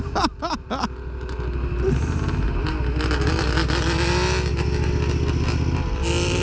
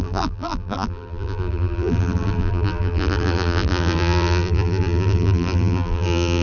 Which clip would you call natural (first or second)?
first